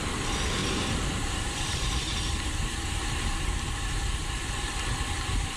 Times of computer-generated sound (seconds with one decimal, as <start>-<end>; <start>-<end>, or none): 0.6-3.8